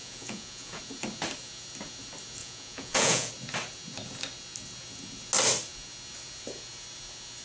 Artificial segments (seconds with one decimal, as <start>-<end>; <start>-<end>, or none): 0.0-0.8; 2.4-3.3